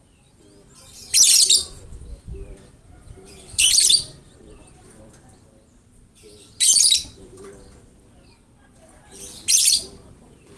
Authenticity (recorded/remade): remade